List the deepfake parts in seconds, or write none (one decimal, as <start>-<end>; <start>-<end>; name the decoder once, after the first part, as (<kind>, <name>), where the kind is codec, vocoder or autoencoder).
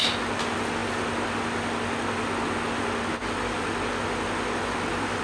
none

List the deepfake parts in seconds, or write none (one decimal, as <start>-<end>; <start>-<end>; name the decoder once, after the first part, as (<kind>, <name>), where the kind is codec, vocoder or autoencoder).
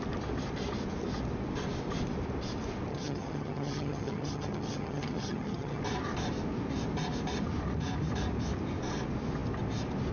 2.9-5.8 (vocoder, HiFi-GAN)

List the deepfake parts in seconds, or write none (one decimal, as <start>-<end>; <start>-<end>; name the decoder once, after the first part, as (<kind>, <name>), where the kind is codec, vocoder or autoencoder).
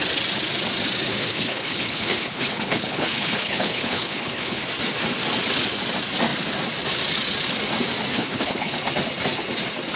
1.2-4.6 (codec, HILCodec); 8.1-8.8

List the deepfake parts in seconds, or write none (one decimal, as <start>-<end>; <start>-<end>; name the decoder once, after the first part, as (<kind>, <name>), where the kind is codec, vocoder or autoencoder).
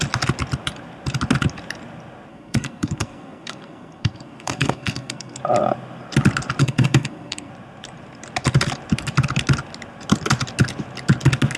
2.3-5.4 (codec, SNAC); 6.6-7.5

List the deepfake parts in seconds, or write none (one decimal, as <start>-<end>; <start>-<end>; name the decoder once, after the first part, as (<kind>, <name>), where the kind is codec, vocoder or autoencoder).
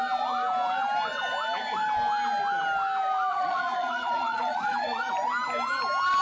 3.3-5.1 (vocoder, Vocos)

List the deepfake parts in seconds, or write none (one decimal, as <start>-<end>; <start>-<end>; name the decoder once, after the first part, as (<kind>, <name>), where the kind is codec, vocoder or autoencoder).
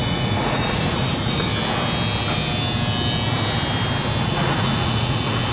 0.0-1.5 (vocoder, Vocos); 4.2-5.5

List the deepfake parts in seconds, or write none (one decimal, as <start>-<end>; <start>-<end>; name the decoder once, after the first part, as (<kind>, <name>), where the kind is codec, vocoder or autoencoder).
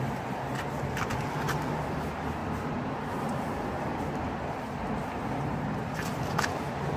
0.0-7.0 (vocoder, BigVGAN v2)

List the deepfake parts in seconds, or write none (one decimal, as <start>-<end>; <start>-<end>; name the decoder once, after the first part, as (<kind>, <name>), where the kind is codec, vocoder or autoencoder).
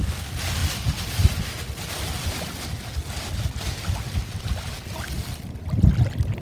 none